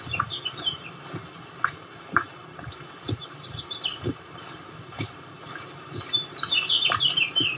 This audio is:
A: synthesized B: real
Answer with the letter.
A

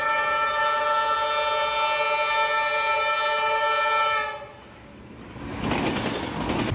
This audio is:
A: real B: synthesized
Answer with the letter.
A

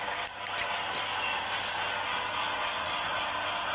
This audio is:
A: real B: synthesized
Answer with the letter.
A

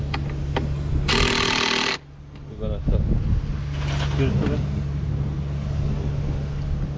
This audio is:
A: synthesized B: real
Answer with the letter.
B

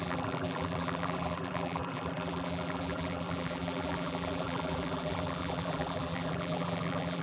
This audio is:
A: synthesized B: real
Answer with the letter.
A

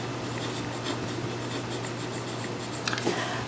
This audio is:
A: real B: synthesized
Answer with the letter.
A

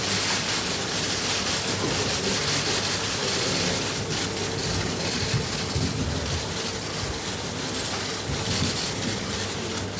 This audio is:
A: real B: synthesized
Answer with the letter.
A